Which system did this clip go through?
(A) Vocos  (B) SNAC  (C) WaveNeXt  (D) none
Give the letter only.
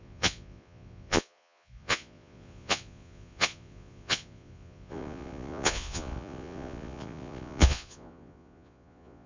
A